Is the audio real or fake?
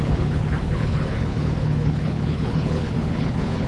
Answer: fake